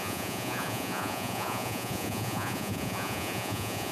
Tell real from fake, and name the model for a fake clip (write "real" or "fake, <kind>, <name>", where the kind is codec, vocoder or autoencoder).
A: fake, vocoder, Vocos